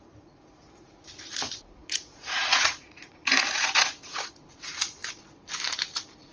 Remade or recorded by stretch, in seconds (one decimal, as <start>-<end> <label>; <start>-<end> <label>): 0.0-5.0 remade; 5.0-6.3 recorded